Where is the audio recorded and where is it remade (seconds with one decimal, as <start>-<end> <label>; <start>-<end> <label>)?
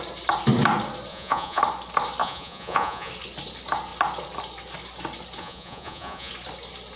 0.0-1.1 recorded; 1.1-1.6 remade; 1.6-2.2 recorded; 2.2-3.1 remade; 3.1-5.4 recorded; 5.4-6.3 remade; 6.3-7.0 recorded